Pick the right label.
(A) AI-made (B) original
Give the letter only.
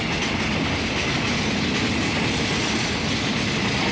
B